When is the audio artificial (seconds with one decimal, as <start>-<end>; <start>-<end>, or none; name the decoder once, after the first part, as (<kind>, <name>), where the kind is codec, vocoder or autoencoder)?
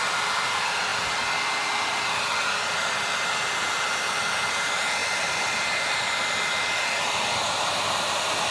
none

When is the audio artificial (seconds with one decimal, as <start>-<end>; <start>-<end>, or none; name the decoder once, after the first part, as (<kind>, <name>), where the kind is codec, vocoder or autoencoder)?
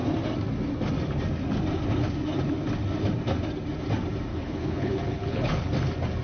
4.3-5.7 (codec, HILCodec)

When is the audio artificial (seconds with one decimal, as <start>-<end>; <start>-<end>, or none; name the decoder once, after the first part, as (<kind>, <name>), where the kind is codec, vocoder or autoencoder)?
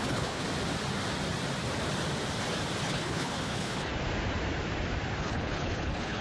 0.0-0.4 (codec, HILCodec); 2.8-3.9; 5.2-6.2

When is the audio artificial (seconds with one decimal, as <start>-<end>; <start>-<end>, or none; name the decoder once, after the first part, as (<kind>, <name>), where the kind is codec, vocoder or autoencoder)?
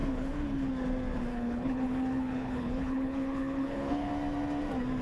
0.0-0.7 (codec, HILCodec); 1.3-4.1